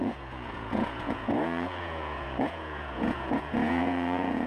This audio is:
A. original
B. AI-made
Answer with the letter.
B